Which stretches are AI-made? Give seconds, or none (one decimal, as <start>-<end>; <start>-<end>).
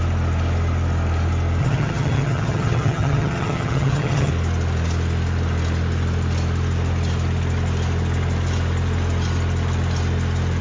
1.6-4.3